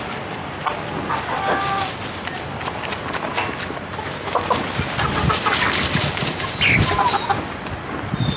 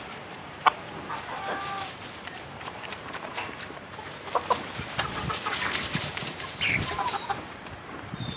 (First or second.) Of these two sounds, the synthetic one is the second